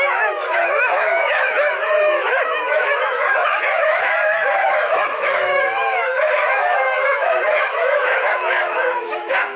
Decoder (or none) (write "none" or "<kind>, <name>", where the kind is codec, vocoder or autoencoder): autoencoder, DAC-VAE